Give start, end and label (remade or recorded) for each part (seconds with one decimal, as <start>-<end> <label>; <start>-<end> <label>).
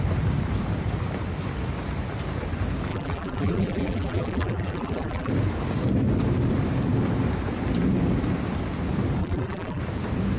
0.0-2.9 recorded; 2.9-5.3 remade; 5.3-9.2 recorded; 9.2-9.8 remade; 9.8-10.4 recorded